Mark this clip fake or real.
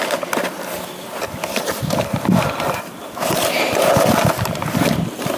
fake